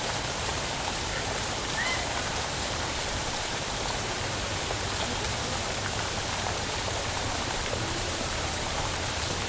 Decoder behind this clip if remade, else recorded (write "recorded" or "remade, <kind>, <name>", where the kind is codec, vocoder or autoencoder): remade, vocoder, BigVGAN v2